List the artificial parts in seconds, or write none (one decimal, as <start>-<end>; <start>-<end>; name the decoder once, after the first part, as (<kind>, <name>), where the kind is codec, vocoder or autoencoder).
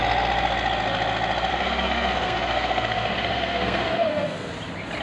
1.5-4.5 (codec, SNAC)